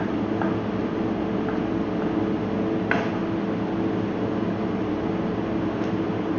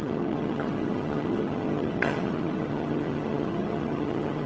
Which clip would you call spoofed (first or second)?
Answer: second